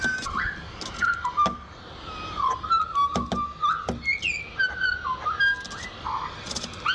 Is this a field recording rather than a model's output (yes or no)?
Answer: yes